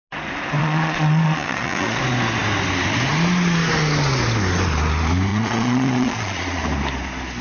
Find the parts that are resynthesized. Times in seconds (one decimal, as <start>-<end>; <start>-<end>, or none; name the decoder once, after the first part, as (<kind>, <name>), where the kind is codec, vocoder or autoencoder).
0.6-2.0 (vocoder, Vocos); 5.3-6.6